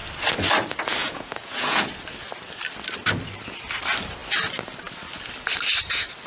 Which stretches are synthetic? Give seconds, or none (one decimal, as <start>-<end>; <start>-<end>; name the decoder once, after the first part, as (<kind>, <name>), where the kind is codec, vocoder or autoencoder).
1.0-1.9 (vocoder, Vocos)